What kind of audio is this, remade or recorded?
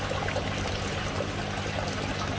recorded